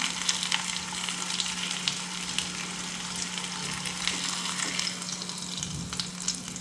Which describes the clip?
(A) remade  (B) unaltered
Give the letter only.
B